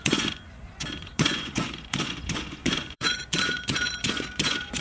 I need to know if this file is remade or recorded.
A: remade